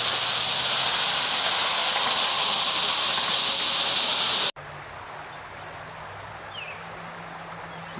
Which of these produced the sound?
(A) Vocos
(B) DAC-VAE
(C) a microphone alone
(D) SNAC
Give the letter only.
C